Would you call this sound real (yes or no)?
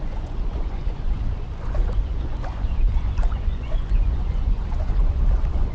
no